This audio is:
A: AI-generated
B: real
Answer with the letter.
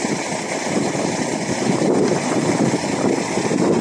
B